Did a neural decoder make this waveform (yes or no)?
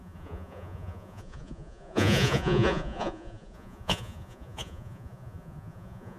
yes